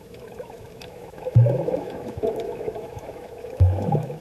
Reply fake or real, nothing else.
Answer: fake